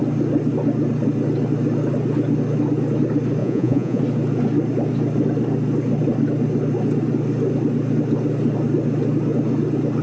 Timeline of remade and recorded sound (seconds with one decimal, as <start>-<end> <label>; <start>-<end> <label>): 0.0-3.4 recorded; 3.4-4.0 remade; 4.0-10.0 recorded